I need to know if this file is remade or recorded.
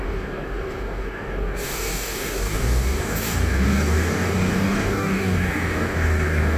remade